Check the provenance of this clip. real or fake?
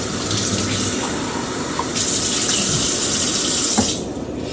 real